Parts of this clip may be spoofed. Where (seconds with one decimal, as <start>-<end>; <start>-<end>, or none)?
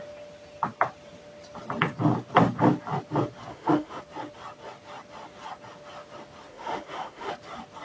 3.5-4.0; 6.5-7.3